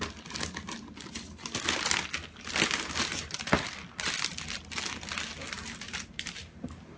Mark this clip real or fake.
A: real